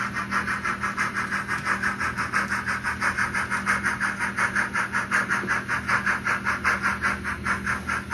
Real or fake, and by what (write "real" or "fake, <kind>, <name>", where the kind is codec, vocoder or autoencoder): real